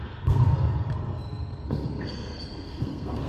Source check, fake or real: fake